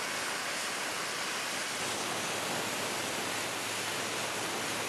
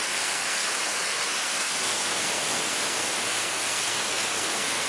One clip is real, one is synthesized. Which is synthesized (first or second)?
second